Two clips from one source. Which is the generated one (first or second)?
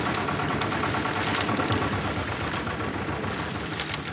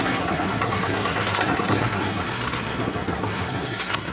second